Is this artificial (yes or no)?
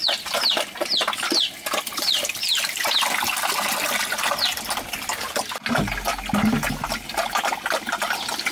no